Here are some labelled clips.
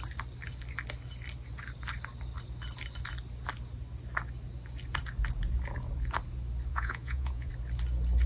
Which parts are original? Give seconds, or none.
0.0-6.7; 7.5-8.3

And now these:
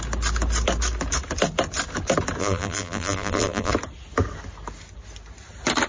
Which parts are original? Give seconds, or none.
0.0-2.4; 3.7-5.9

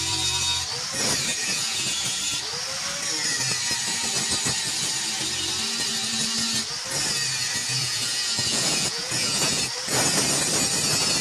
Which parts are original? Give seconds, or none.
0.0-1.3; 2.2-7.6; 9.6-11.2